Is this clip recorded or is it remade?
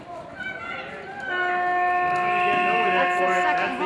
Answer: recorded